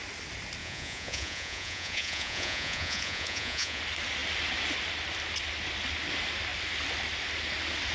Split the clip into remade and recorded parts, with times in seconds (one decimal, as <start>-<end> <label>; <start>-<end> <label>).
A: 0.0-0.6 recorded; 0.6-3.8 remade; 3.8-7.9 recorded